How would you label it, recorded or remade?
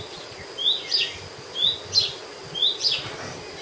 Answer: recorded